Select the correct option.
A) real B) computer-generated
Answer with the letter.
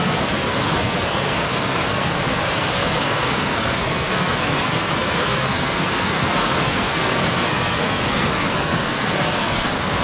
B